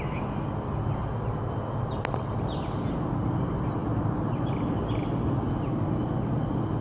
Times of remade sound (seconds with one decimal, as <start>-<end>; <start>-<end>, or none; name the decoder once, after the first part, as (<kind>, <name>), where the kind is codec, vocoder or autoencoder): none